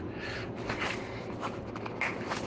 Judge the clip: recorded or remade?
recorded